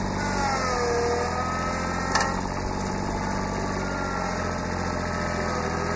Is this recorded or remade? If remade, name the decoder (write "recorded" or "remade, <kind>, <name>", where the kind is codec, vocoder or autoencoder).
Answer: recorded